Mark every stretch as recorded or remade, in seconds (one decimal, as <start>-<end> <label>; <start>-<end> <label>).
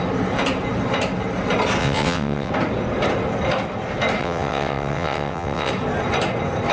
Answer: 0.0-1.8 recorded; 1.8-2.5 remade; 2.5-4.2 recorded; 4.2-5.7 remade; 5.7-6.7 recorded